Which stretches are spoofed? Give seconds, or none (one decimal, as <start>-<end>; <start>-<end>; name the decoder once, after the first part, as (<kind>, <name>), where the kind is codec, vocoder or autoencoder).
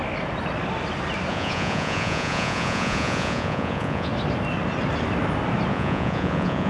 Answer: 1.3-4.1 (vocoder, Vocos); 5.7-6.7